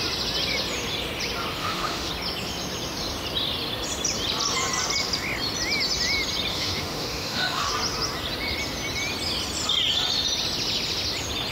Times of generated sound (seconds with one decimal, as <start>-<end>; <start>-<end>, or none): 1.6-2.1; 6.5-7.7